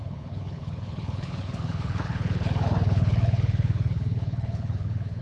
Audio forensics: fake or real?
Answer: fake